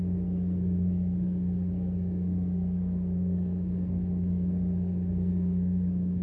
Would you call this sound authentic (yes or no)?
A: no